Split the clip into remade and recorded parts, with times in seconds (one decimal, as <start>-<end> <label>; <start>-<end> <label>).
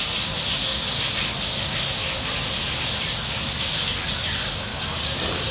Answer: 0.0-4.7 recorded; 4.7-5.5 remade